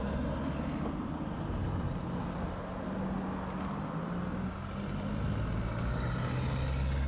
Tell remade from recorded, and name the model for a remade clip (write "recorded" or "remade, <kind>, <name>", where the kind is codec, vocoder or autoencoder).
recorded